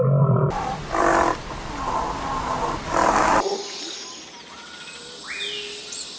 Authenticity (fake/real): real